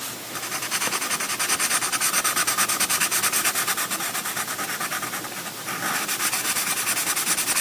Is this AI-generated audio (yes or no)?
no